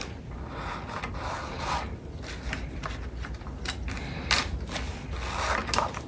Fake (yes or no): no